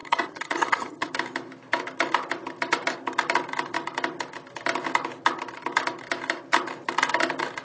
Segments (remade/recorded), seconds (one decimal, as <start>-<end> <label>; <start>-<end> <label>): 0.0-1.1 remade; 1.1-7.6 recorded